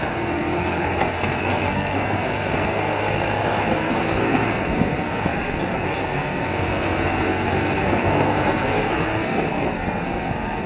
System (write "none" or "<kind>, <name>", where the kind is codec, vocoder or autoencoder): codec, SNAC